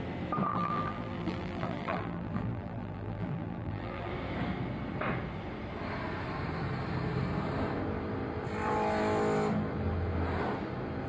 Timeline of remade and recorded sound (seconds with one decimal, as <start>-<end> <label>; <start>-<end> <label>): 0.0-0.5 recorded; 0.5-4.1 remade; 4.1-11.1 recorded